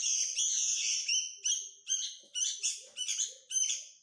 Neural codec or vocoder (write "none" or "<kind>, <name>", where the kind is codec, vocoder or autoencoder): none